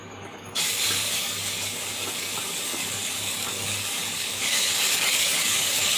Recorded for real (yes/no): no